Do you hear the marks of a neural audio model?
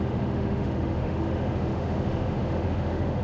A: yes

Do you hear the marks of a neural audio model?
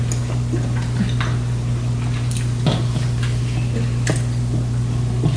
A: no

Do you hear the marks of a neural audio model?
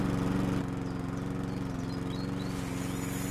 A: no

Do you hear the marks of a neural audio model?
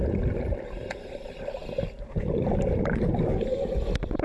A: no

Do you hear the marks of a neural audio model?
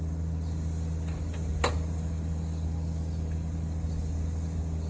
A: no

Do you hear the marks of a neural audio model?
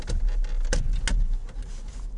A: no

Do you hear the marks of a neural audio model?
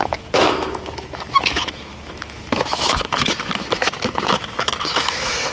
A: yes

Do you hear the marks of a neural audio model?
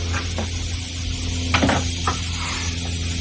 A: no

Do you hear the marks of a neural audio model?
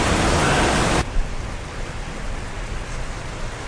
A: no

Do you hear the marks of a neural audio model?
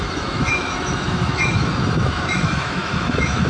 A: yes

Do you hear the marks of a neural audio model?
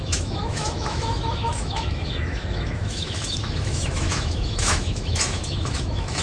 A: yes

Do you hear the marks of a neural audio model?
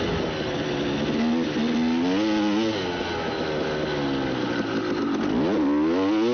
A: no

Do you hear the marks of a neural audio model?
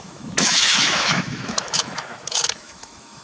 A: yes